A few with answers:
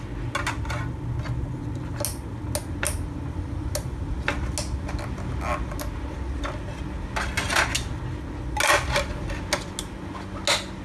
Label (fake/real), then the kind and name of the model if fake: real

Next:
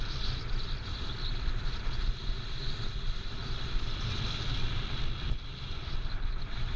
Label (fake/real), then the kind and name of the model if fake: real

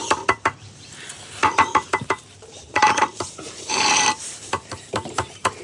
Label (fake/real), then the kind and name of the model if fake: fake, vocoder, BigVGAN v2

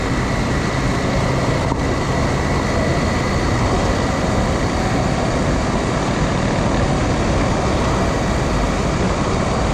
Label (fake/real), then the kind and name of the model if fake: real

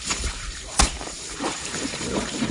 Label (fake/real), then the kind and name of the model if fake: fake, vocoder, BigVGAN v2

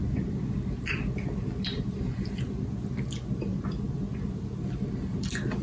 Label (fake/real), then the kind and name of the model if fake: real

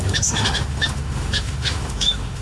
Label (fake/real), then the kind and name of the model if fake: fake, autoencoder, DAC-VAE